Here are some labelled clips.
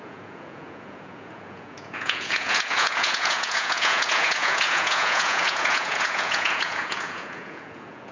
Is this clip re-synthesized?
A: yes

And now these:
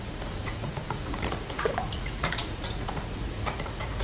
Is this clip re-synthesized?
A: yes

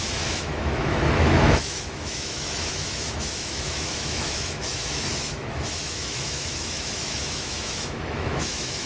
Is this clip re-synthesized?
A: yes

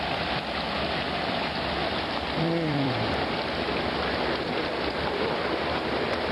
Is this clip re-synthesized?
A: yes